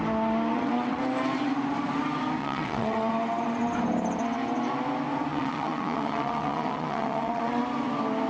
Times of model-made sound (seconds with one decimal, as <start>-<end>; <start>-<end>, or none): 0.5-1.0; 2.4-3.1; 5.3-7.6